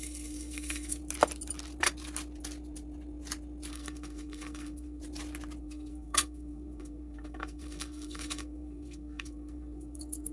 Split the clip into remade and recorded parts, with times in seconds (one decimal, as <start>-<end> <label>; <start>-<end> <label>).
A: 0.0-1.0 remade; 1.0-3.7 recorded; 3.7-5.0 remade; 5.0-5.6 recorded; 5.6-10.3 remade